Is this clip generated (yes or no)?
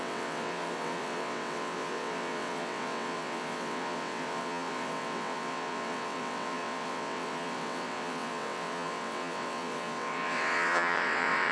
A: yes